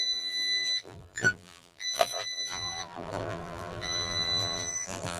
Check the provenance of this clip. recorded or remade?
remade